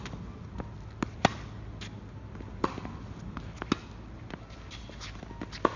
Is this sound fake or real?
real